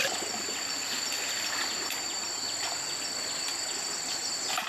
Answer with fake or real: real